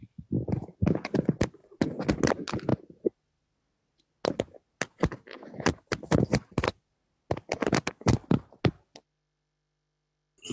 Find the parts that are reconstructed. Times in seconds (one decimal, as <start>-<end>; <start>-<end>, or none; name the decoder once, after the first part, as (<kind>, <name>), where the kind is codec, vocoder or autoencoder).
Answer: none